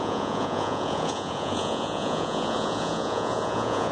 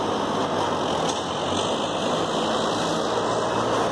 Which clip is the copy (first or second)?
first